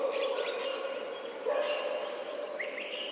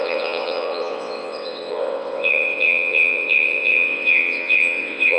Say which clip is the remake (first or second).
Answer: second